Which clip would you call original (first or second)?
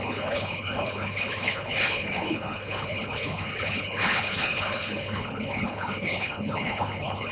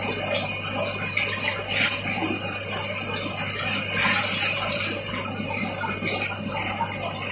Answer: second